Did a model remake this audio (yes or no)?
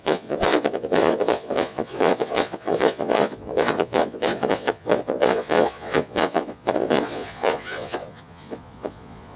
yes